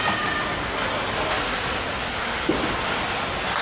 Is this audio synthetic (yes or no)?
no